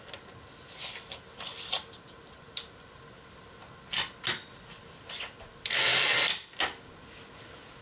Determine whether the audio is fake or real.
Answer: real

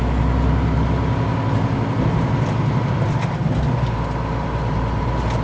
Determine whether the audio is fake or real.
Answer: real